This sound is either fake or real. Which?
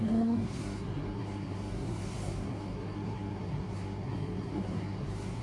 fake